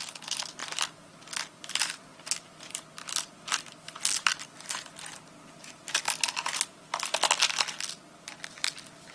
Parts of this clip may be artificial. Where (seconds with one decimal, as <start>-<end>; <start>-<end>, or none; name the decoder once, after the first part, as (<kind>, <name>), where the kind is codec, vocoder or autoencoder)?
none

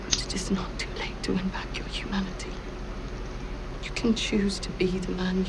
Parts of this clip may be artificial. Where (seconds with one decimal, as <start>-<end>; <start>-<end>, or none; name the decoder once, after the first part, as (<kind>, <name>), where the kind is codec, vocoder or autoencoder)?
none